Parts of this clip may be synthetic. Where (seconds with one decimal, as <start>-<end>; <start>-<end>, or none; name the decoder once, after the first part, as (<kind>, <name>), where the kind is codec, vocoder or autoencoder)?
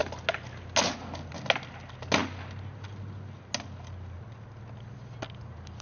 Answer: none